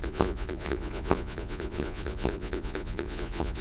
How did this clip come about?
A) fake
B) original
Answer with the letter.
A